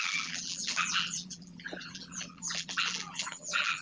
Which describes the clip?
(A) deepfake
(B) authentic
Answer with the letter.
A